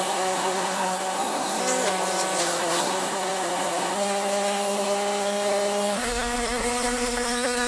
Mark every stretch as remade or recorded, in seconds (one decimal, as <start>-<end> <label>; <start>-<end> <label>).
0.0-1.6 remade; 1.6-2.4 recorded; 2.4-7.7 remade